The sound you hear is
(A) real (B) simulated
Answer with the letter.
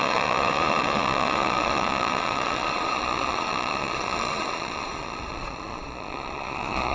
B